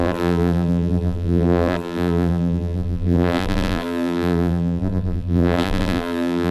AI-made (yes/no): yes